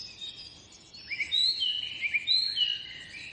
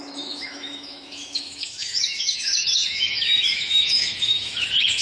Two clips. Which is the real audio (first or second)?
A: first